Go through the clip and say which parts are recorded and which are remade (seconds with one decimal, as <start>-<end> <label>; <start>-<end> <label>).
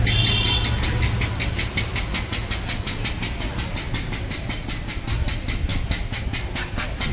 0.0-7.1 recorded